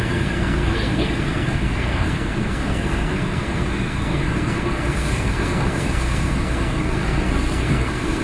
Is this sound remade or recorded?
remade